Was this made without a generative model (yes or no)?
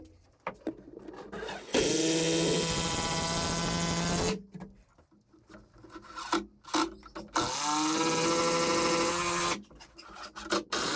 yes